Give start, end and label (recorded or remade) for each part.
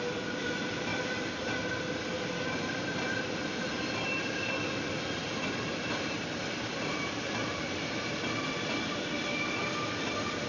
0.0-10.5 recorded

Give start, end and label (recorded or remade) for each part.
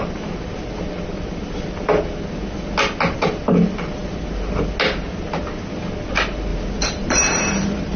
0.0-6.5 recorded; 6.5-8.0 remade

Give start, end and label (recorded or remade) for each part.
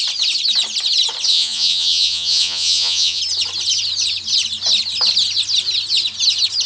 0.0-1.3 recorded; 1.3-3.2 remade; 3.2-6.7 recorded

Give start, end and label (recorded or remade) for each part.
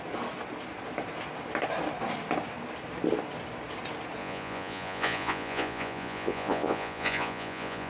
0.0-4.2 recorded; 4.2-7.9 remade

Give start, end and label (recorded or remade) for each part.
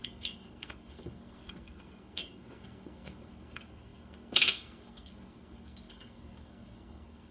0.0-7.3 remade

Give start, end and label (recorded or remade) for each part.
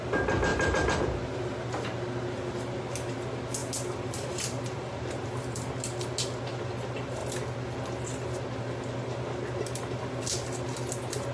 0.0-0.5 recorded; 0.5-1.0 remade; 1.0-3.6 recorded; 3.6-5.7 remade; 5.7-11.3 recorded